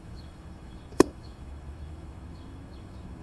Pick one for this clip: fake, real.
fake